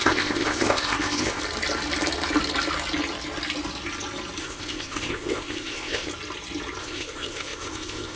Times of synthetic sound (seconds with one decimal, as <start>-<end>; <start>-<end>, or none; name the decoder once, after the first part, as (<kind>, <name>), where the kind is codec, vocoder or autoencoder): 0.0-1.4 (codec, ZipCodec); 4.4-6.1; 6.8-8.2